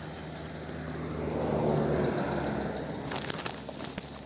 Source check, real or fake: real